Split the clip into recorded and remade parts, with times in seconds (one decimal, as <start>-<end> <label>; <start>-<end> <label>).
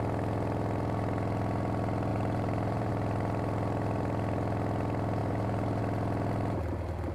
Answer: 0.0-2.1 recorded; 2.1-2.9 remade; 2.9-5.2 recorded; 5.2-5.8 remade; 5.8-7.1 recorded